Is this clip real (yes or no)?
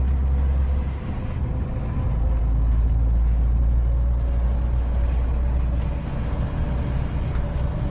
yes